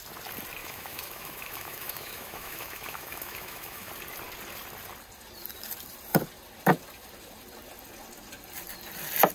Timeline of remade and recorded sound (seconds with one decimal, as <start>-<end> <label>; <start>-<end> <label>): 0.0-0.6 recorded; 0.6-3.9 remade; 3.9-9.3 recorded